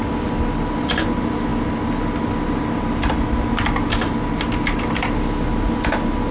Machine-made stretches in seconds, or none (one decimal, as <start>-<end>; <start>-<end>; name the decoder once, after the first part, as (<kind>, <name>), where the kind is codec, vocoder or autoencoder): none